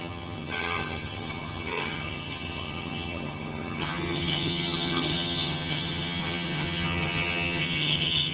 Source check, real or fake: fake